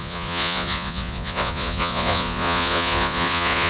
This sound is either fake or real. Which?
fake